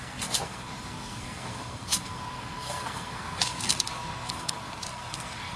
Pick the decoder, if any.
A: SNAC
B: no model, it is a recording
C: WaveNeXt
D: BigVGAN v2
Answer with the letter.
A